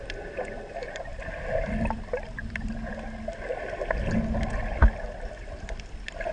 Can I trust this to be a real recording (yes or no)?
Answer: yes